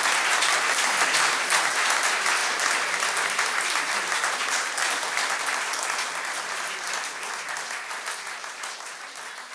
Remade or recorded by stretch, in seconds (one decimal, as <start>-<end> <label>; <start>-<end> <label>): 0.0-9.5 recorded